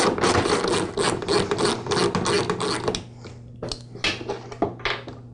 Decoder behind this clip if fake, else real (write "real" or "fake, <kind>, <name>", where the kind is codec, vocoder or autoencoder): real